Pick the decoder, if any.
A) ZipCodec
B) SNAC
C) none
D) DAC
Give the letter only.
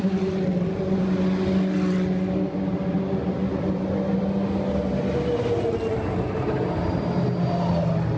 C